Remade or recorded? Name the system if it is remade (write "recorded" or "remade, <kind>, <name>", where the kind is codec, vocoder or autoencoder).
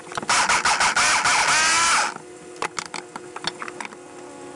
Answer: recorded